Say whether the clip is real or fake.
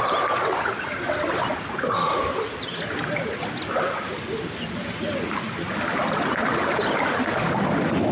real